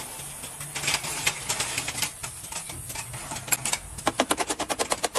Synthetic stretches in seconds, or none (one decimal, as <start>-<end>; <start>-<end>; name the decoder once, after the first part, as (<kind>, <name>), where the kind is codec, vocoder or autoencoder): none